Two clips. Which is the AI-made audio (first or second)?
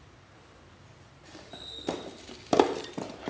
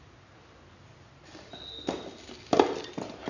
first